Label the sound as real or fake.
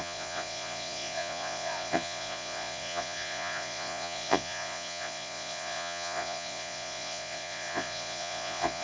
fake